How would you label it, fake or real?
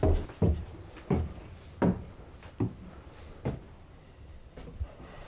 real